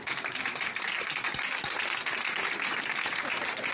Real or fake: real